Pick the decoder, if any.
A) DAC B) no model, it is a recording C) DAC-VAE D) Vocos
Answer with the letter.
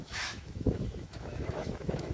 C